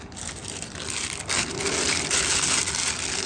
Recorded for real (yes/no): yes